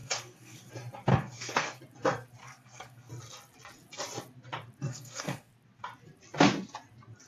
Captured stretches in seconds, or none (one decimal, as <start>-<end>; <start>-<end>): 0.7-1.1; 1.8-2.4; 3.1-4.9; 5.5-7.3

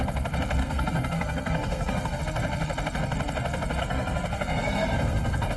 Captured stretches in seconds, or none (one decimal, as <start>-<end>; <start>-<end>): 0.0-0.6; 2.2-3.8

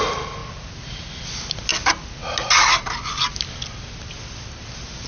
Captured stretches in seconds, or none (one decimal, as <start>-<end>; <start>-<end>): 0.0-5.1

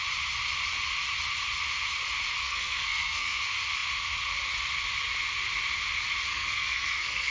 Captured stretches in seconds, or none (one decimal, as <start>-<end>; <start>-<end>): 0.0-2.4; 3.4-6.3